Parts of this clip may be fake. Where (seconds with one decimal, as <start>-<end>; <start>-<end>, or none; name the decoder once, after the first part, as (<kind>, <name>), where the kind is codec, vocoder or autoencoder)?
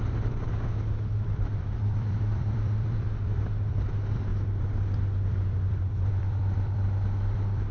0.0-7.7 (vocoder, BigVGAN v2)